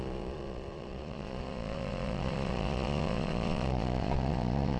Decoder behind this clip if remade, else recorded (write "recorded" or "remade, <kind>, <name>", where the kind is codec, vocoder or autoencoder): remade, vocoder, Vocos